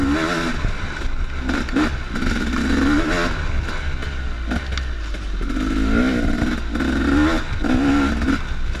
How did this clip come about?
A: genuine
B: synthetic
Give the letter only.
A